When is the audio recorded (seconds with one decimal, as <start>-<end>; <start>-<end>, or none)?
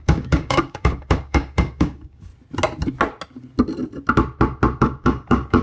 2.3-4.8